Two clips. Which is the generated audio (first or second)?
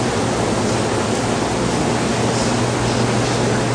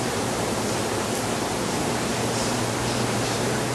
second